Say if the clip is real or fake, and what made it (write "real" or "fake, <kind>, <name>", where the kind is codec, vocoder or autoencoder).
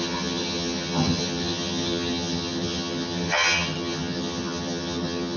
fake, vocoder, HiFi-GAN